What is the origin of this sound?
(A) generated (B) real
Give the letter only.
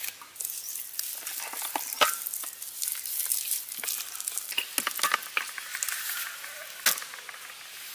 B